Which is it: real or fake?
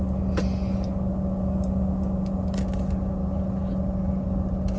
real